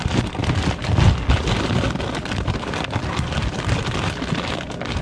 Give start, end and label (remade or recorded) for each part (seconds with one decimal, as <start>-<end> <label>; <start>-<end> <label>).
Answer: 0.0-5.0 recorded